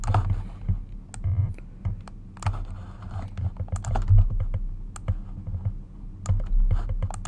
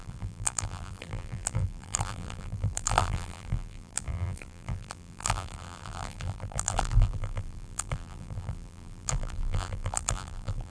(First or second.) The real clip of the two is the first